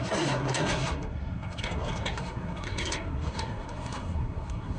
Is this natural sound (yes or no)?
no